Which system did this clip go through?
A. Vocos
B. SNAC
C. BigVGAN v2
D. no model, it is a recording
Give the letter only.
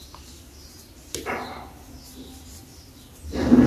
D